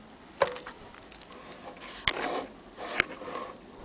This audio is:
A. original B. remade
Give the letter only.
A